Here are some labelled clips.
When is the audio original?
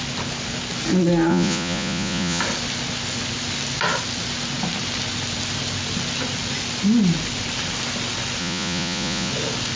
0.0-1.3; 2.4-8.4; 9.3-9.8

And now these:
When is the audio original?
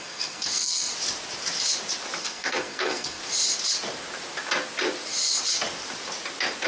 0.9-2.2; 3.2-6.7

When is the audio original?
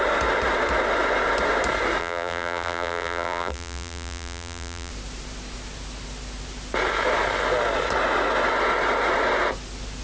0.0-2.0; 4.9-10.0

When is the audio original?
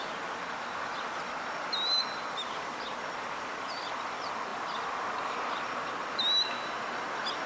0.0-7.5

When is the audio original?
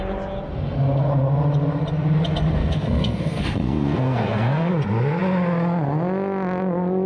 0.0-2.6; 4.7-7.1